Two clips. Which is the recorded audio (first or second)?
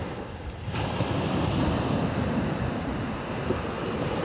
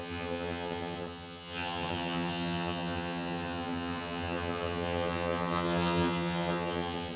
first